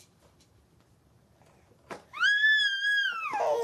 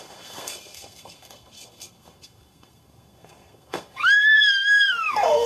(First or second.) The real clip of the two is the first